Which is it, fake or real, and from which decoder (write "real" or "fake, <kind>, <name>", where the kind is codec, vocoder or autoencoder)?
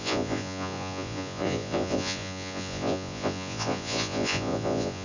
fake, vocoder, Vocos